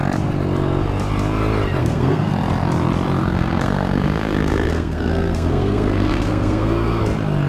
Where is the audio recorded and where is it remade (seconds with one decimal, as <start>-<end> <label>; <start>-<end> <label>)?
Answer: 0.0-1.8 recorded; 1.8-2.3 remade; 2.3-3.2 recorded; 3.2-7.0 remade; 7.0-7.5 recorded

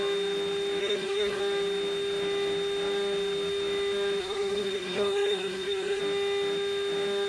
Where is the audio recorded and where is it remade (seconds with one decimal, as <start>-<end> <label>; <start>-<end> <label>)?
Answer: 0.0-0.8 recorded; 0.8-1.4 remade; 1.4-4.2 recorded; 4.2-6.0 remade; 6.0-7.3 recorded

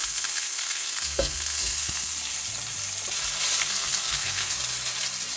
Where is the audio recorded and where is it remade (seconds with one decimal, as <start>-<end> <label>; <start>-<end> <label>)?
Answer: 0.0-2.1 remade; 2.1-3.6 recorded; 3.6-4.6 remade; 4.6-5.4 recorded

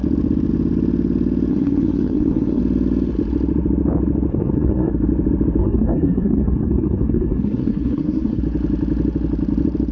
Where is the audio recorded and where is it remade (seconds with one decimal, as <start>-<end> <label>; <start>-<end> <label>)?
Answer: 0.0-1.5 recorded; 1.5-2.6 remade; 2.6-4.3 recorded; 4.3-4.9 remade; 4.9-5.6 recorded; 5.6-8.4 remade; 8.4-9.9 recorded

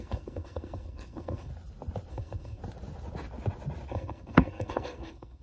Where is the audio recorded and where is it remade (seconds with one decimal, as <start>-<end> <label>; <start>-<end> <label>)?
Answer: 0.0-1.5 remade; 1.5-2.1 recorded; 2.1-2.6 remade; 2.6-3.9 recorded; 3.9-5.4 remade

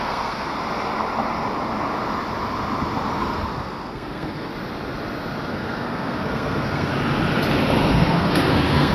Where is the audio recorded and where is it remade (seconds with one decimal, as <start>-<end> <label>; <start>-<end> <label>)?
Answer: 0.0-0.5 remade; 0.5-3.1 recorded; 3.1-4.5 remade; 4.5-5.5 recorded; 5.5-6.9 remade; 6.9-7.9 recorded; 7.9-8.9 remade

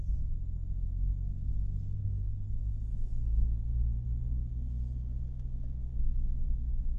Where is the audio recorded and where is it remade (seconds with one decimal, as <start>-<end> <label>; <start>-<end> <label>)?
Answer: 0.0-2.0 recorded; 2.0-2.5 remade; 2.5-7.0 recorded

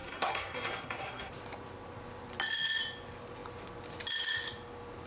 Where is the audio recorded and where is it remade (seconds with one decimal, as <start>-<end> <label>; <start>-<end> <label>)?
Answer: 0.0-1.3 remade; 1.3-5.1 recorded